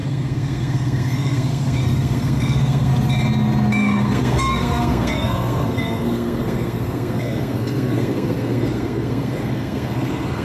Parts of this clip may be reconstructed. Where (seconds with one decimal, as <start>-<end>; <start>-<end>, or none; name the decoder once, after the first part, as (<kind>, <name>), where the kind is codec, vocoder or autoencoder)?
0.0-2.9 (codec, SNAC); 3.7-10.4

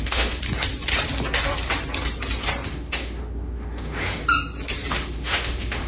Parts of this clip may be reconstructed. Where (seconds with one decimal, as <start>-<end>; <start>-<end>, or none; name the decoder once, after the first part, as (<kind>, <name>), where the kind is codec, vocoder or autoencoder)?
0.0-0.4 (autoencoder, DAC-VAE); 2.7-4.2; 4.9-5.9

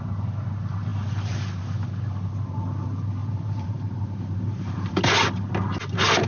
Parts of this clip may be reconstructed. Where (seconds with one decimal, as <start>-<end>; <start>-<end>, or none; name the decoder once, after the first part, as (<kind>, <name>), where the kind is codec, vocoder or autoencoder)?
3.2-4.9 (vocoder, BigVGAN v2)

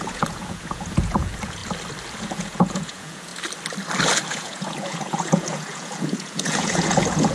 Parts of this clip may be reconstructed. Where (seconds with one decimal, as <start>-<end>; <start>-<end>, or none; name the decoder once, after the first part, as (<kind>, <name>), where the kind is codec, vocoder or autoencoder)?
0.0-1.6 (vocoder, Vocos); 2.2-3.3; 4.3-7.3

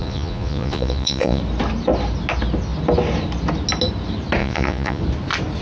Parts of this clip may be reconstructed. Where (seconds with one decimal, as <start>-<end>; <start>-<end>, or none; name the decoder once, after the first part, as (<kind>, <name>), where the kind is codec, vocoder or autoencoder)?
0.0-1.4 (vocoder, Vocos); 4.4-5.0

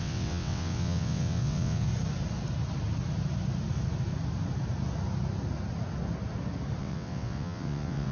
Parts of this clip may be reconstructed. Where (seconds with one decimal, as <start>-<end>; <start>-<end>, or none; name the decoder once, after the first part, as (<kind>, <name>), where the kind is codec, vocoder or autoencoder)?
0.0-1.9 (vocoder, WaveNeXt); 6.8-8.1

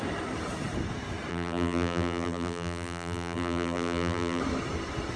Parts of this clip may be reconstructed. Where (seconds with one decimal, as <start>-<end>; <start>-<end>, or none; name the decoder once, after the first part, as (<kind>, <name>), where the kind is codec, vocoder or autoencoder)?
1.3-4.4 (vocoder, BigVGAN v2)